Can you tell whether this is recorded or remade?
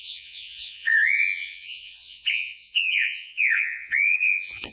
remade